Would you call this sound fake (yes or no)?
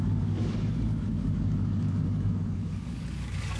yes